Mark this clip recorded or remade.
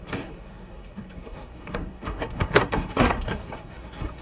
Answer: remade